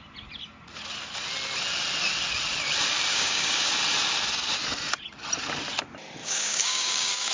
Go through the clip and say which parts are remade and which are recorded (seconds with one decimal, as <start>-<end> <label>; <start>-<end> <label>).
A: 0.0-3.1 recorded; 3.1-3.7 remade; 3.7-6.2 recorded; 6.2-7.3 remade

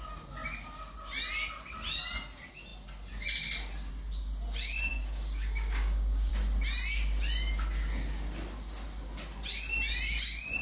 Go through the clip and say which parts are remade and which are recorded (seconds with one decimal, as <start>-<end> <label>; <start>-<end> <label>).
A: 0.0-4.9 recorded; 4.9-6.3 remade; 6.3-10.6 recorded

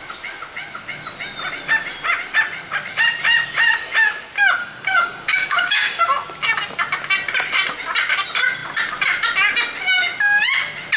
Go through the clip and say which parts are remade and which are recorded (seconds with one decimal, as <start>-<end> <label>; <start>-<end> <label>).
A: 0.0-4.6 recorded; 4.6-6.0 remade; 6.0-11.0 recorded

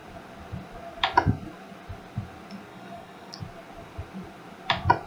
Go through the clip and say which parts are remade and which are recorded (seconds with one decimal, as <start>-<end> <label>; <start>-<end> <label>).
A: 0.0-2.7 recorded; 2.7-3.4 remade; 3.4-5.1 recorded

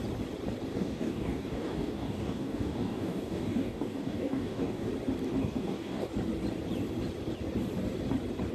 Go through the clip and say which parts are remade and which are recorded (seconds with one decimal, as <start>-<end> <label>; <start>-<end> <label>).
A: 0.0-0.7 recorded; 0.7-4.9 remade; 4.9-5.4 recorded; 5.4-6.1 remade; 6.1-8.5 recorded